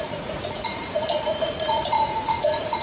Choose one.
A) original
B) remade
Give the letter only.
B